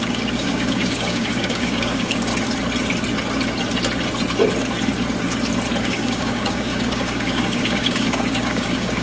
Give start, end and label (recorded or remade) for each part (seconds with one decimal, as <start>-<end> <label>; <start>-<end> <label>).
0.0-2.3 remade; 2.3-5.8 recorded; 5.8-9.0 remade